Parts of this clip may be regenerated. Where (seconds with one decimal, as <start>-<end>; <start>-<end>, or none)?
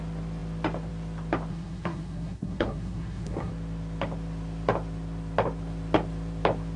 1.5-3.5